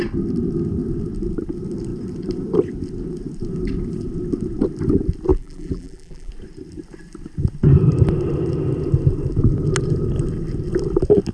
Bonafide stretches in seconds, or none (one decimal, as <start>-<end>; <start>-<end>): 0.0-5.3; 6.3-11.3